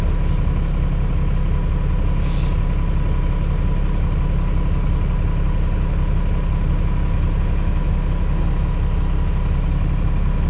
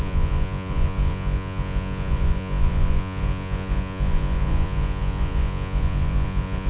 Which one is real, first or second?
first